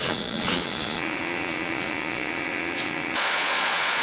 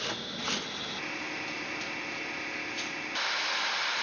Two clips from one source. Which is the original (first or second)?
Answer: second